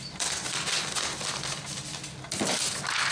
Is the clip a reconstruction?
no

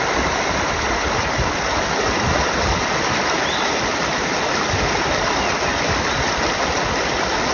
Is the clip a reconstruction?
yes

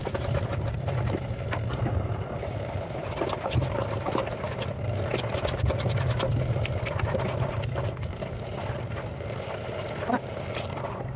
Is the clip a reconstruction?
no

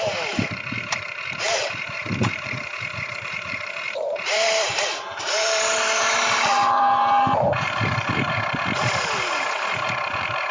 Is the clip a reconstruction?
yes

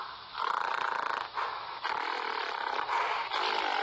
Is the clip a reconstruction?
no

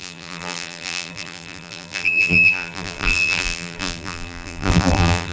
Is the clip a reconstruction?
yes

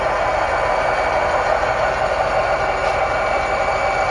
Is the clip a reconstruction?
no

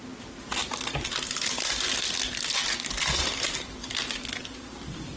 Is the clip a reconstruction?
yes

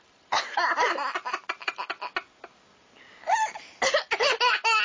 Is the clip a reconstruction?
no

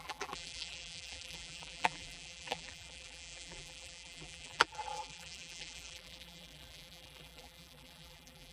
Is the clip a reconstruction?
yes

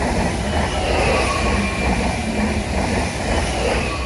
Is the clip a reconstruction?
no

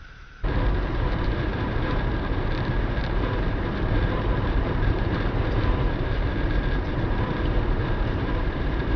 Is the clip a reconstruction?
yes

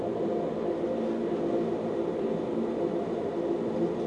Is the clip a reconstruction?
no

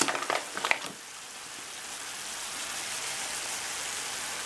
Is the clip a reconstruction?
no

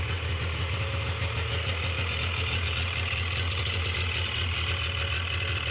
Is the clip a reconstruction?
no